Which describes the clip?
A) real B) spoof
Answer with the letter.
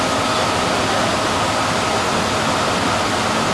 A